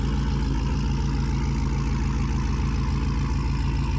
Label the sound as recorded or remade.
recorded